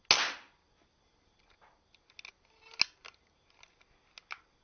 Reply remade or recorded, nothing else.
recorded